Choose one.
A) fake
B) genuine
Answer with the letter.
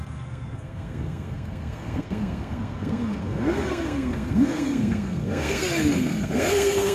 A